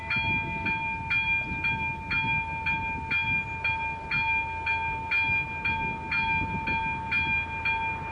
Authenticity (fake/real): real